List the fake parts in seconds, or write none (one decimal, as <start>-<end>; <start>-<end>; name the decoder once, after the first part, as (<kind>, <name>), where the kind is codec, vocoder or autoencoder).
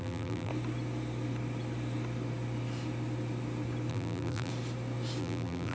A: 0.0-0.5 (vocoder, BigVGAN v2); 3.9-4.5; 5.2-5.7